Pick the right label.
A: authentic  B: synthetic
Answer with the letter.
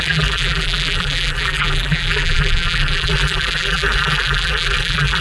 B